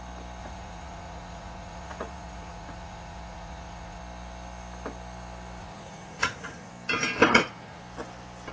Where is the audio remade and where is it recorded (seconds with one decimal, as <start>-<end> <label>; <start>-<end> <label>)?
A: 0.0-0.4 recorded; 0.4-4.0 remade; 4.0-5.6 recorded; 5.6-6.7 remade; 6.7-7.3 recorded; 7.3-7.8 remade; 7.8-8.5 recorded